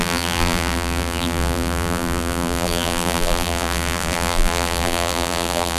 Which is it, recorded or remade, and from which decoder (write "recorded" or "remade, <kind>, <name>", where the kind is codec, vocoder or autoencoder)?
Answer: remade, vocoder, BigVGAN v2